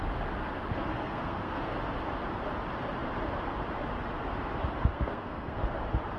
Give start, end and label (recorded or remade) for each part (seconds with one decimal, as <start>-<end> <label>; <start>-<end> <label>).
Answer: 0.0-0.9 recorded; 0.9-1.7 remade; 1.7-4.9 recorded; 4.9-5.6 remade; 5.6-6.2 recorded